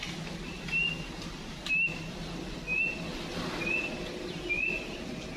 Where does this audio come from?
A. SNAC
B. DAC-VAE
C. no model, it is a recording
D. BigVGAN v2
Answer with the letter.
C